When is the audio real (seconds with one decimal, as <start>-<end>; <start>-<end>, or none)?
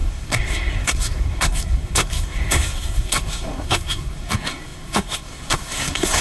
none